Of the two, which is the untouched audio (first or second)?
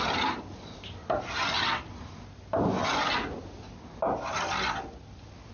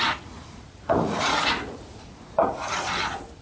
first